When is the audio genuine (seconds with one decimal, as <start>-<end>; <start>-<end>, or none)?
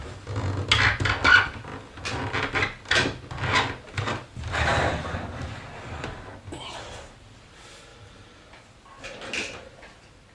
0.0-10.3